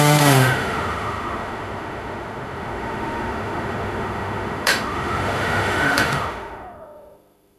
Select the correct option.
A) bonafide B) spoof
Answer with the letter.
B